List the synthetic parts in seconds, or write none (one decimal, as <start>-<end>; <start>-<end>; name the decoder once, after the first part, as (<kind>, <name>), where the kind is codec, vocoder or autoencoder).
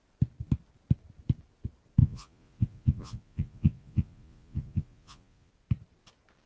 2.0-5.5 (vocoder, Vocos)